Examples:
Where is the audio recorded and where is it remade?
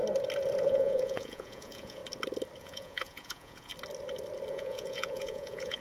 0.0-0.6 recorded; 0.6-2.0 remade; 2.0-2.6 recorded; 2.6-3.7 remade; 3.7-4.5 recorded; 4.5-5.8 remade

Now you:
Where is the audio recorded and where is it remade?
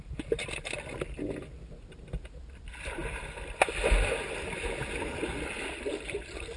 0.0-6.6 recorded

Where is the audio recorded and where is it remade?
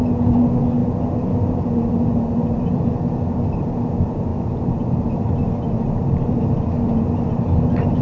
0.0-8.0 recorded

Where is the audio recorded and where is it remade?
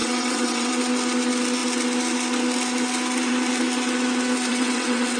0.0-0.7 remade; 0.7-4.5 recorded; 4.5-5.2 remade